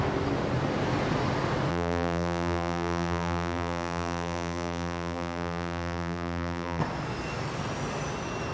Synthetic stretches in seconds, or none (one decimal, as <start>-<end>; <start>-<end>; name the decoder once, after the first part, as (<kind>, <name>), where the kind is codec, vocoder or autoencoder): 1.7-6.8 (vocoder, BigVGAN v2)